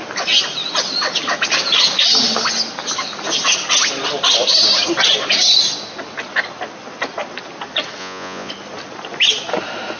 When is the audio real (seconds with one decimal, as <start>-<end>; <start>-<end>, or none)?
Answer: 0.0-8.0; 8.5-10.0